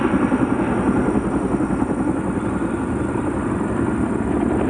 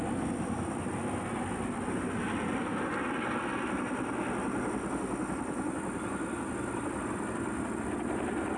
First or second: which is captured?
second